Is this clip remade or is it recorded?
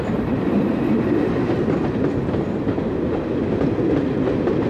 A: recorded